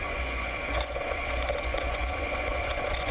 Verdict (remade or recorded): remade